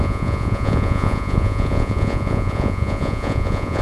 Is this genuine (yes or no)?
no